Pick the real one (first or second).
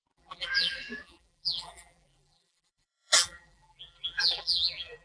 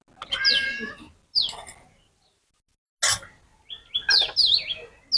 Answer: second